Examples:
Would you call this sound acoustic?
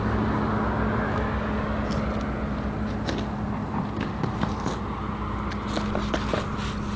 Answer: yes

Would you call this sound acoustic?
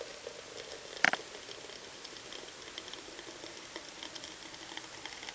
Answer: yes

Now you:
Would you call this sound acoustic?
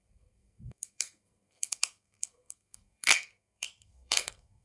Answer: no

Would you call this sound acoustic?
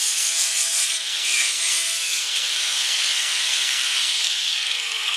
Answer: no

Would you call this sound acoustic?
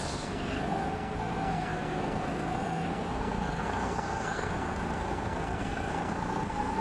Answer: no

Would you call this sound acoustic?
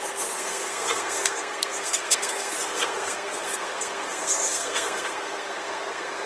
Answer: no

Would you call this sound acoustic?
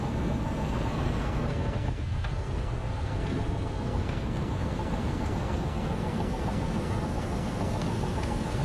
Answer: no